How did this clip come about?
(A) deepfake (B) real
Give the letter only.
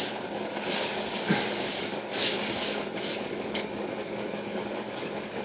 A